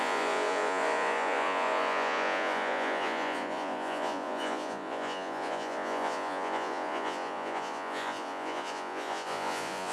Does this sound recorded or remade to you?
remade